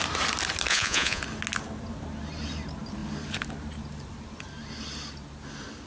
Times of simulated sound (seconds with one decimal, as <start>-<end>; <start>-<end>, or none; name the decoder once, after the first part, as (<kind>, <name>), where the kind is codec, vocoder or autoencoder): 0.7-1.2 (vocoder, Vocos)